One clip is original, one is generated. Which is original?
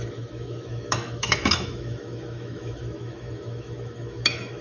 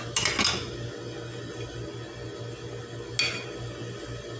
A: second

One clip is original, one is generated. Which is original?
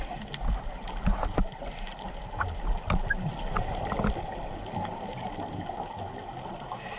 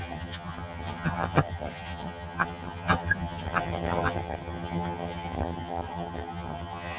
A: first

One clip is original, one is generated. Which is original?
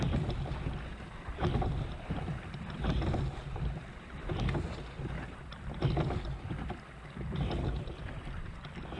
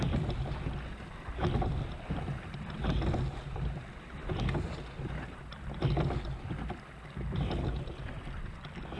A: second